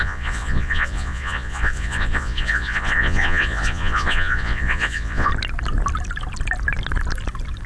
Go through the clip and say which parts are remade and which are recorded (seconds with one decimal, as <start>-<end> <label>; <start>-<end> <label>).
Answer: 0.0-5.3 remade; 5.3-7.7 recorded